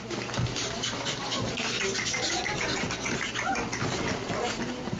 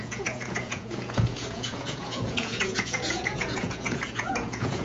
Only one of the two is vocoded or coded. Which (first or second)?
second